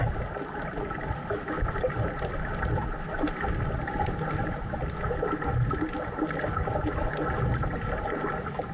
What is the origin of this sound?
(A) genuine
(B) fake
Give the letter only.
A